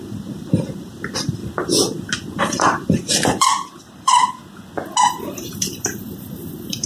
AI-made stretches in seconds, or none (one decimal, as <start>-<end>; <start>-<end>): 0.0-1.4; 2.4-4.4; 5.1-6.9